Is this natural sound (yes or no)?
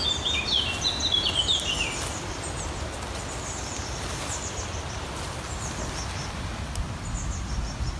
yes